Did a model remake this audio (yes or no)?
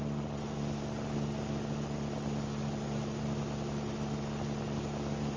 no